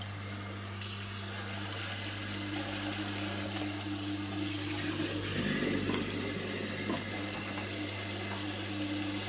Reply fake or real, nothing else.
real